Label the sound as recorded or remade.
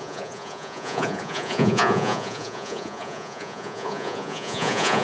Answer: remade